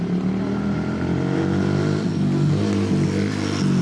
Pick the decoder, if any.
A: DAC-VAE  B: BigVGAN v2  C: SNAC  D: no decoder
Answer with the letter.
D